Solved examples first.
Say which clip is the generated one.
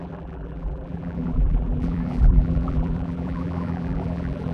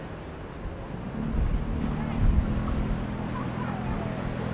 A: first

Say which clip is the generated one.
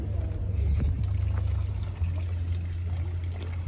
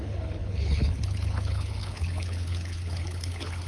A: second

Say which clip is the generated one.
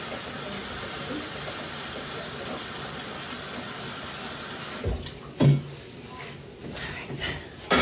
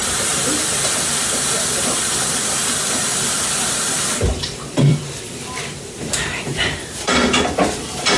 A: second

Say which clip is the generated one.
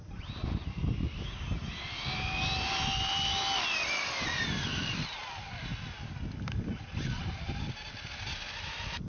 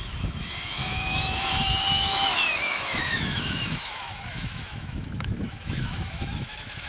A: second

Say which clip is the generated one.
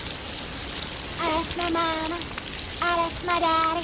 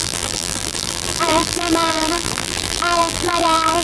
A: second